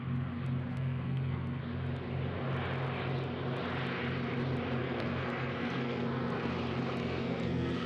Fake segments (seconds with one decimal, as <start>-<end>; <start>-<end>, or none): 0.7-1.6; 4.8-6.5; 7.0-7.9